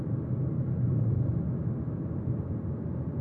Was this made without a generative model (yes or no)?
yes